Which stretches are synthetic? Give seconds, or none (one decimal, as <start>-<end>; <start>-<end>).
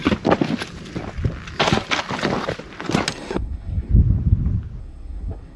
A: 3.1-3.9; 4.8-5.6